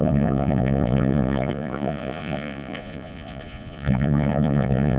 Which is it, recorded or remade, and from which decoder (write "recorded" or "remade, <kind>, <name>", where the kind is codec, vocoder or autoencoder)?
remade, vocoder, Vocos